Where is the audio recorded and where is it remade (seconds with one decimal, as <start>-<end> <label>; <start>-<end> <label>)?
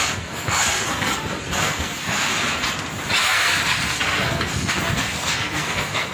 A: 0.0-2.3 remade; 2.3-3.2 recorded; 3.2-6.1 remade